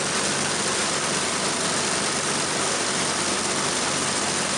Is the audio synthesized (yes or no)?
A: no